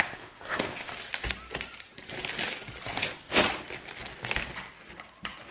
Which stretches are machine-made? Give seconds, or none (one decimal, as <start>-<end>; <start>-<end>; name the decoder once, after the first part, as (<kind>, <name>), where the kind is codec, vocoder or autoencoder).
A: 0.0-0.9 (codec, ZipCodec); 3.0-3.4